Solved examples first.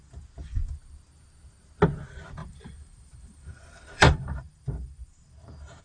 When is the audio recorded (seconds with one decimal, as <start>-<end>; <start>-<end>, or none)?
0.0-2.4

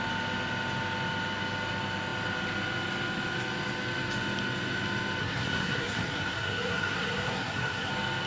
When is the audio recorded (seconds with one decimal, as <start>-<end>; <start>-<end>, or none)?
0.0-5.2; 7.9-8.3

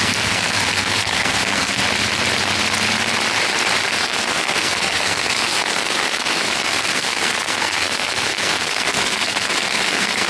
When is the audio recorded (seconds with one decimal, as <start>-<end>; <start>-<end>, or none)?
1.8-3.9